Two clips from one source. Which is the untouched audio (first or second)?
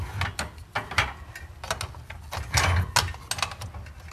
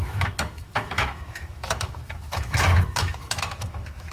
first